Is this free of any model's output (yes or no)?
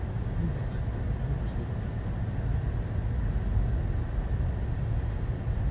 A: yes